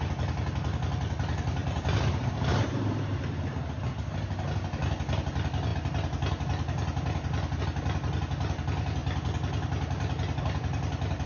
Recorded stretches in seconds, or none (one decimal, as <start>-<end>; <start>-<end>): 0.0-1.6; 3.2-11.3